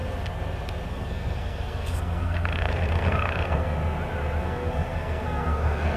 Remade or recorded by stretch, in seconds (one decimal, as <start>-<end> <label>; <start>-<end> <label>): 0.0-0.9 recorded; 0.9-3.8 remade; 3.8-4.4 recorded; 4.4-6.0 remade